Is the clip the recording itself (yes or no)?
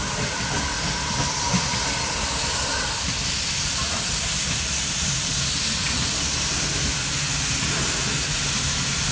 no